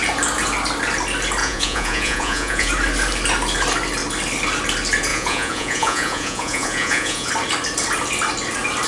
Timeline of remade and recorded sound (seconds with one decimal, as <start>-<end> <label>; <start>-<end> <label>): 0.0-1.4 recorded; 1.4-2.7 remade; 2.7-5.1 recorded; 5.1-7.3 remade; 7.3-8.9 recorded